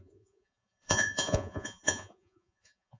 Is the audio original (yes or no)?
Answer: no